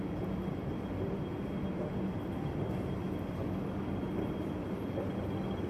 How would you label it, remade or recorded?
recorded